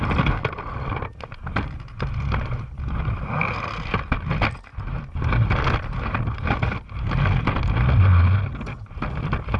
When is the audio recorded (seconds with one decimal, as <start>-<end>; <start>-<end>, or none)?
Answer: 0.0-9.6